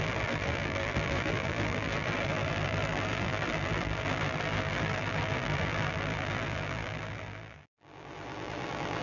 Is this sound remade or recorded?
remade